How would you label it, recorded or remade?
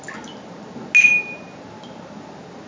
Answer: recorded